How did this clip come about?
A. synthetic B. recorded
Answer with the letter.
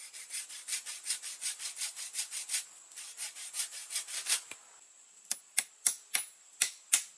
B